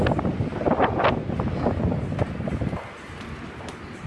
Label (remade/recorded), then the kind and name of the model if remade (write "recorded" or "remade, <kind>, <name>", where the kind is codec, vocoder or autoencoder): recorded